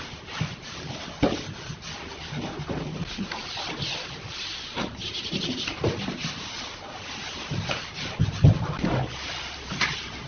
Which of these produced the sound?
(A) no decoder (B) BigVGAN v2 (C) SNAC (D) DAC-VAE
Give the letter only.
A